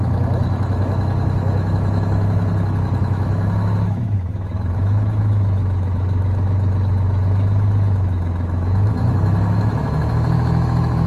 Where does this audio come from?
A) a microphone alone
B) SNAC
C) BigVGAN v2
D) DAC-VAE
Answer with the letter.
D